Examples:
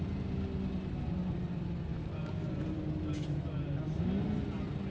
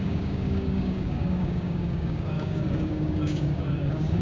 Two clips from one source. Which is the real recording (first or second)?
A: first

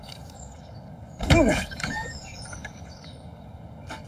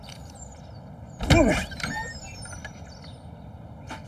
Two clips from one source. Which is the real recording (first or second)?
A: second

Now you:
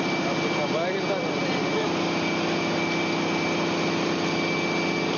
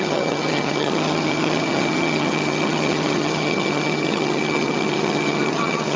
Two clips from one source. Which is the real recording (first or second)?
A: first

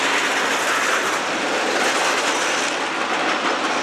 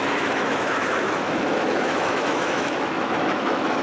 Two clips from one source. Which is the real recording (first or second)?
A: first